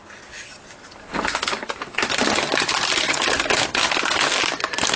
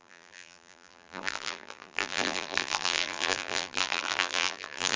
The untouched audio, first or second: first